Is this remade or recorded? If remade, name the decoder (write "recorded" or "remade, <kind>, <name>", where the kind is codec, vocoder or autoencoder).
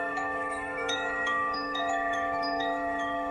remade, autoencoder, DAC-VAE